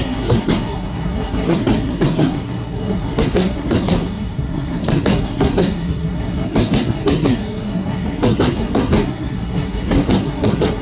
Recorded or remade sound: remade